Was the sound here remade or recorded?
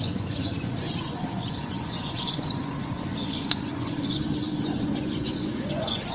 remade